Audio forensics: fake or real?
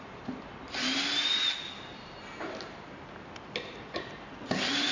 real